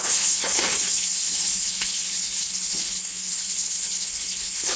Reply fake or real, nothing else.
fake